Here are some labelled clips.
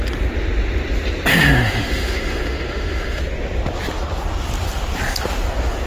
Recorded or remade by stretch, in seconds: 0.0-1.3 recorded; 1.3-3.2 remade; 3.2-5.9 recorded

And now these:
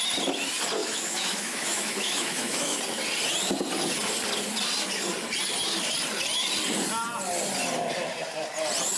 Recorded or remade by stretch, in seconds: 0.0-0.8 recorded; 0.8-2.8 remade; 2.8-9.0 recorded